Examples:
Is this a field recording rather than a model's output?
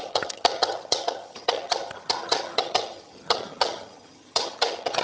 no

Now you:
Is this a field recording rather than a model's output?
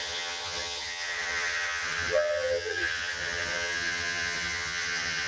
no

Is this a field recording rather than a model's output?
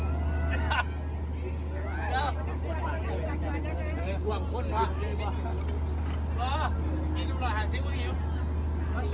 yes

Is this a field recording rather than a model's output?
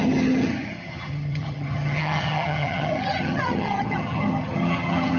no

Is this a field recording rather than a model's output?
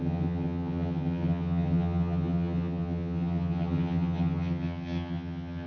no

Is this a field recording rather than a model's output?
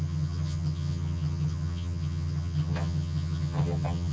no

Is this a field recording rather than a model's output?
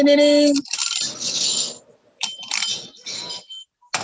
yes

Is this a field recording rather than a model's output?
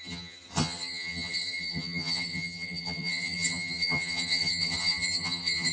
no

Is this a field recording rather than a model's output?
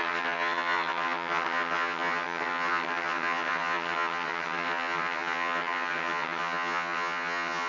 no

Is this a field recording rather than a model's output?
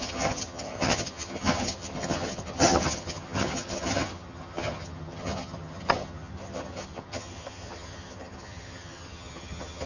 no